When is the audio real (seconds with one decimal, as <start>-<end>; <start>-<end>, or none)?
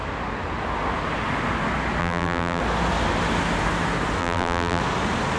0.0-2.0; 2.6-4.2; 4.8-5.4